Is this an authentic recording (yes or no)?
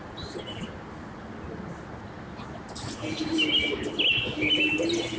yes